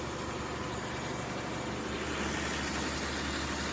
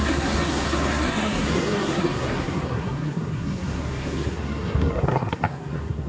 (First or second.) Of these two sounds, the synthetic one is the second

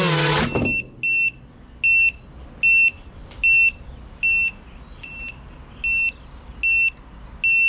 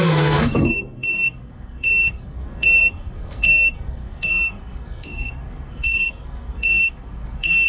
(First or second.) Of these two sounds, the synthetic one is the second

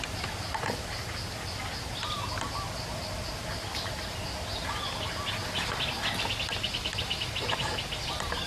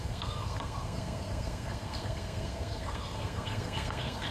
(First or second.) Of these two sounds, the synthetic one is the second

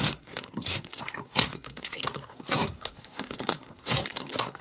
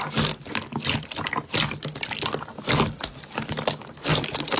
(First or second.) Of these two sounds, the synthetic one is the first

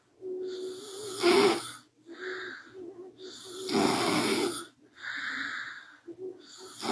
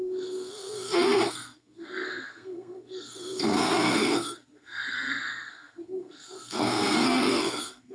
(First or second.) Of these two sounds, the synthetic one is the second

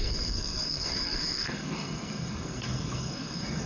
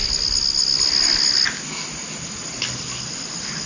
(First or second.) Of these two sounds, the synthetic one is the first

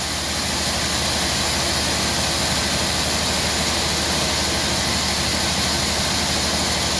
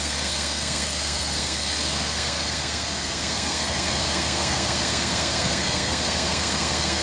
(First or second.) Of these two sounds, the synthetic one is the second